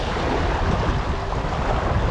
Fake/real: real